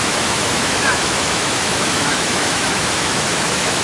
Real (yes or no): no